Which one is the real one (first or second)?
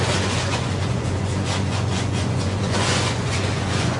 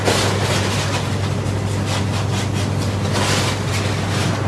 second